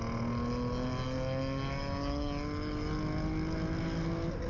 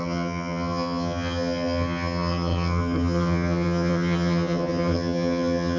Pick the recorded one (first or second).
first